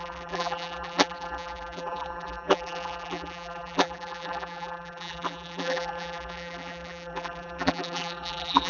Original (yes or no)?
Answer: no